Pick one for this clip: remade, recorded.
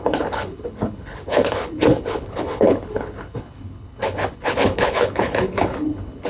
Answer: remade